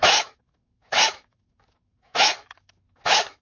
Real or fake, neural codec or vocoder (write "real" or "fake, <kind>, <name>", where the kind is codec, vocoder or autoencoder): fake, autoencoder, DAC-VAE